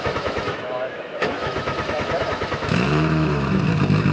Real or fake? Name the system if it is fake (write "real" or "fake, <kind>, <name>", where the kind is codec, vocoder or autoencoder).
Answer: fake, autoencoder, DAC-VAE